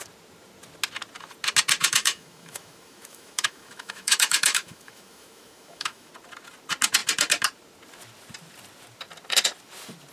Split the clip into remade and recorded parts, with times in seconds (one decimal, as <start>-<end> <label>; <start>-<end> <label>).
0.0-1.8 recorded; 1.8-6.1 remade; 6.1-10.1 recorded